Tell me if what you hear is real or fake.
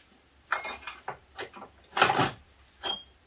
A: real